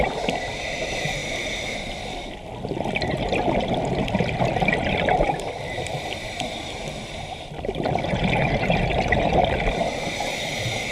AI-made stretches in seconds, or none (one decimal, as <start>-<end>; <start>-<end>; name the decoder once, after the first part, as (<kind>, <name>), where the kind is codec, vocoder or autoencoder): 0.0-1.2 (vocoder, BigVGAN v2); 4.1-10.9